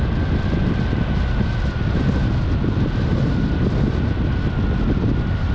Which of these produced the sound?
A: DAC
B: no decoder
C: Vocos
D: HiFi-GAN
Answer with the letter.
B